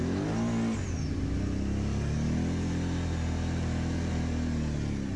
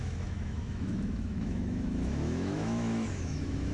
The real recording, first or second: first